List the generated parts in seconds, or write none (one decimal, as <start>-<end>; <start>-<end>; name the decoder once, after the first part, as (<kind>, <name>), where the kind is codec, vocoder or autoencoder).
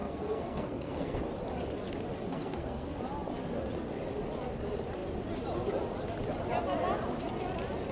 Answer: 0.0-1.2 (codec, SNAC); 2.2-3.0